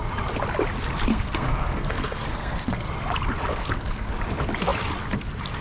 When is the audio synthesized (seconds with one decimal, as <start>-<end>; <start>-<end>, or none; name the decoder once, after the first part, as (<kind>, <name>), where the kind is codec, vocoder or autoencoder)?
1.1-2.9 (codec, SNAC); 3.5-4.1